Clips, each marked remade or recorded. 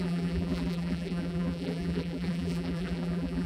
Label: remade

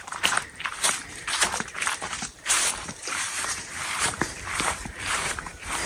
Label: remade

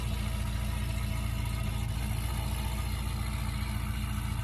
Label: recorded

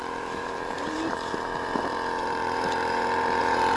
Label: remade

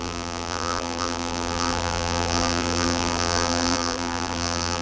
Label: remade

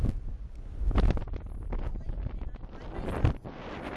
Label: recorded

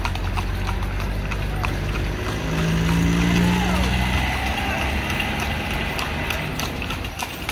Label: recorded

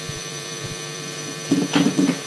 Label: remade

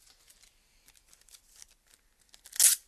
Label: recorded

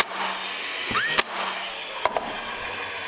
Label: recorded